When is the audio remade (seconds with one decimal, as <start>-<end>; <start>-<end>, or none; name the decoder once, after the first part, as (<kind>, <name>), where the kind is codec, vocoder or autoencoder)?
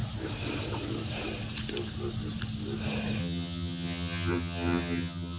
3.2-5.4 (vocoder, HiFi-GAN)